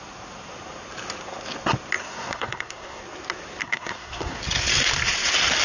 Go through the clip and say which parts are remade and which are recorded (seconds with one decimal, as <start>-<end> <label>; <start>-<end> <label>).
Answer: 0.0-2.0 recorded; 2.0-3.0 remade; 3.0-3.6 recorded; 3.6-4.4 remade; 4.4-5.6 recorded